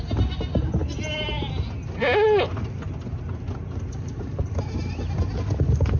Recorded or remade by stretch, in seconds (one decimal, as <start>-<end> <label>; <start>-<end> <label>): 0.0-6.0 recorded